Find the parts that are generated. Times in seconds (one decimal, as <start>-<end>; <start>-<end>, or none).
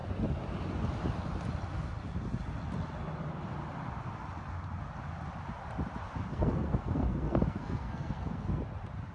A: 6.3-8.6